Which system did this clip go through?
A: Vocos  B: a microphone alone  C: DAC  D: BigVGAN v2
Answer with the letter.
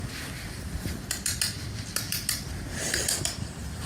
B